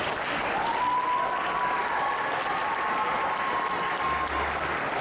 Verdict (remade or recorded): recorded